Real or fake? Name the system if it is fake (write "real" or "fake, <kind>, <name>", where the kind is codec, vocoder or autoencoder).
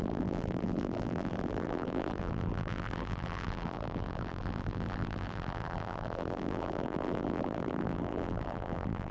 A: fake, vocoder, BigVGAN v2